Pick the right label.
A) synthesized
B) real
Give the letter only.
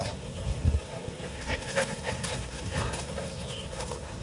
A